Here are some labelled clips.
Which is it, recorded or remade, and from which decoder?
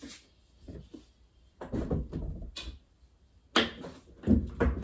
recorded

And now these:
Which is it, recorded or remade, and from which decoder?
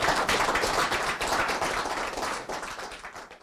recorded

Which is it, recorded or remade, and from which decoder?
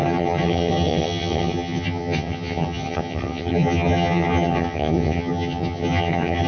remade, vocoder, HiFi-GAN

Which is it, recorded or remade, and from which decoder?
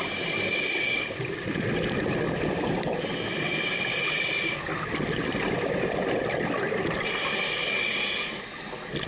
recorded